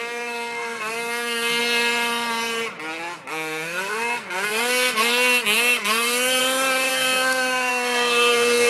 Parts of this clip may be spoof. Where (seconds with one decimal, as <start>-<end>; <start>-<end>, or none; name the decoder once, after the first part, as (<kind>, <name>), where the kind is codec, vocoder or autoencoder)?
0.0-1.6 (codec, SNAC); 3.3-6.4; 6.9-8.7